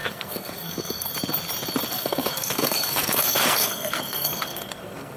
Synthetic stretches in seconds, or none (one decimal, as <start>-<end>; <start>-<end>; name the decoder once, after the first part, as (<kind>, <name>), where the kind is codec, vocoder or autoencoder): 0.0-1.1 (codec, SNAC); 1.9-5.2